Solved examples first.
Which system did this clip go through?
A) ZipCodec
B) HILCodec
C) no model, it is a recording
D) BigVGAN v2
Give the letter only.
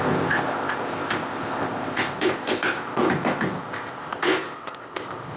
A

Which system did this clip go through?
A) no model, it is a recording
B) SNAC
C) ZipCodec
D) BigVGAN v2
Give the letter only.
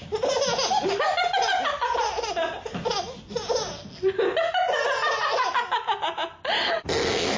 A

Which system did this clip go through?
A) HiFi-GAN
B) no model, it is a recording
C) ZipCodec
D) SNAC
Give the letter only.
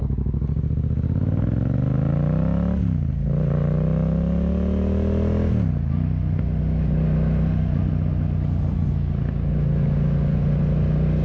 B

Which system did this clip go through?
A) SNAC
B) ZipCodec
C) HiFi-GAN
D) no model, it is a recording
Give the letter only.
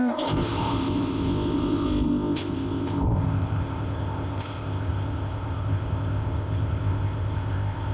B